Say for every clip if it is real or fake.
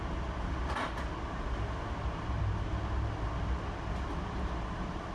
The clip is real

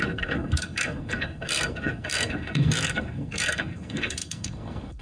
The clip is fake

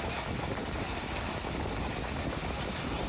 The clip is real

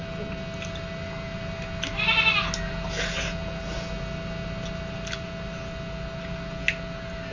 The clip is real